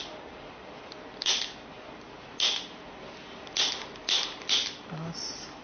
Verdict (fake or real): real